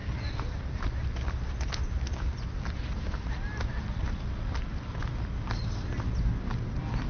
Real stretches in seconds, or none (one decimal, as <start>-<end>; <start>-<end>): 0.0-7.1